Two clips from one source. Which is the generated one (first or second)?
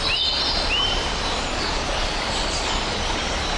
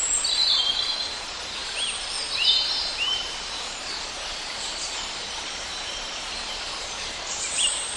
second